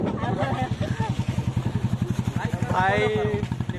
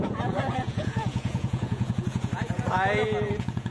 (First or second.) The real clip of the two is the first